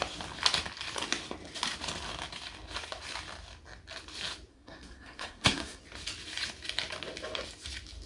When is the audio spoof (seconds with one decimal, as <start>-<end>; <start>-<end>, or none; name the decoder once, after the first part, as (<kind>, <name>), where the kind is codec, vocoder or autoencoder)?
4.5-5.8 (codec, SNAC)